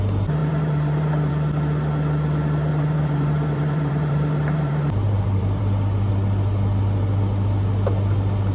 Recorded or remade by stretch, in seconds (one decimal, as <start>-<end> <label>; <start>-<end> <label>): 0.0-0.4 recorded; 0.4-1.3 remade; 1.3-2.7 recorded; 2.7-5.6 remade; 5.6-8.5 recorded